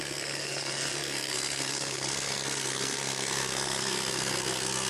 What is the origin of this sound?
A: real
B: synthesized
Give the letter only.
B